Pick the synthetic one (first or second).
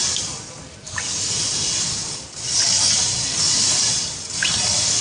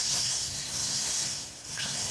second